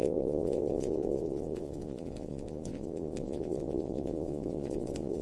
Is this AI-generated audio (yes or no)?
yes